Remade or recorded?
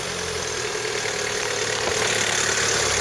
recorded